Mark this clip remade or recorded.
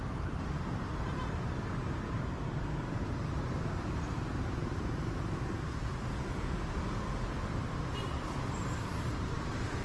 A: remade